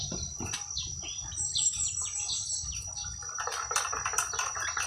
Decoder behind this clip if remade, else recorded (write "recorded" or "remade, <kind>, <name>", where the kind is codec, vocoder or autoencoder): recorded